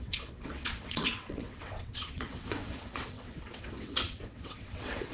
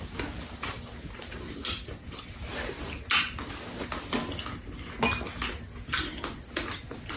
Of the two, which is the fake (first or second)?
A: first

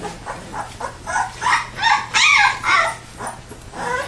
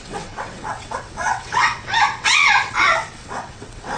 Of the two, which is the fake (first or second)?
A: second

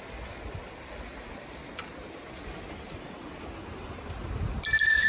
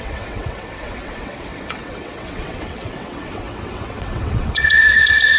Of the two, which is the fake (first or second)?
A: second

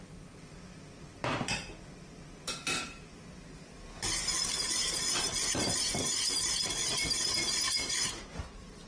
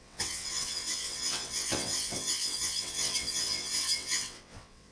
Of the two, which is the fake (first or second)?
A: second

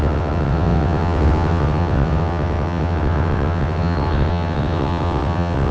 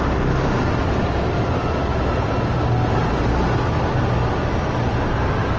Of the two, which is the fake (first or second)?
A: first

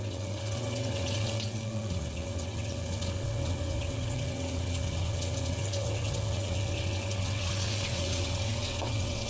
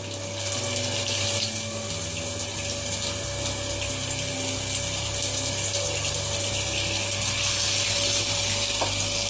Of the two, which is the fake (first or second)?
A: first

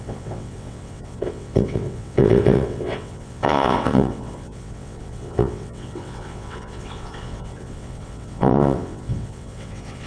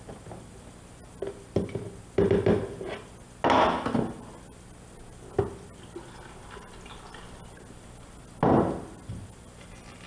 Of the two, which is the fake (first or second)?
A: first